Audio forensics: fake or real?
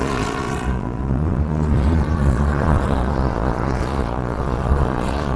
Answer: fake